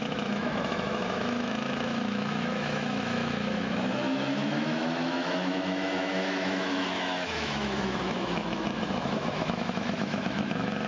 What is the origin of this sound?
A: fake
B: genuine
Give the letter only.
A